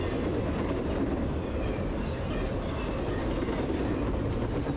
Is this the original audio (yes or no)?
yes